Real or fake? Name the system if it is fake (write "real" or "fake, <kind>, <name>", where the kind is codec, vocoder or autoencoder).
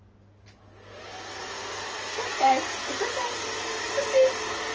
real